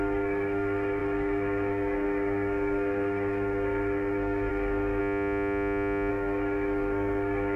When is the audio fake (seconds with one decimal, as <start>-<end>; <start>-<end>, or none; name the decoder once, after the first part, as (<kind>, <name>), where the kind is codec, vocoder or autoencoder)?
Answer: 0.0-5.0 (codec, SNAC); 6.1-7.6